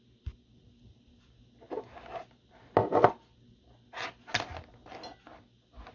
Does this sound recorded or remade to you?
recorded